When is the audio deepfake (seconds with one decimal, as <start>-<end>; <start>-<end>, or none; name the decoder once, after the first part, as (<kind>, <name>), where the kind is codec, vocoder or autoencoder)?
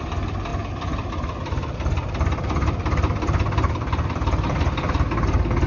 0.0-0.5 (vocoder, BigVGAN v2); 1.1-5.7